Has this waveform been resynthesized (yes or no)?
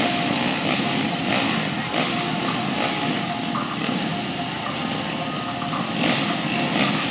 no